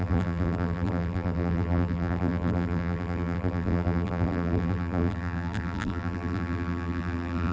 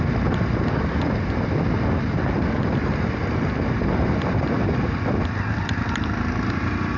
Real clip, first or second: second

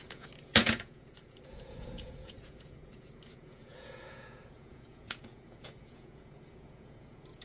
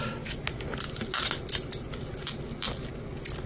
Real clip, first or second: second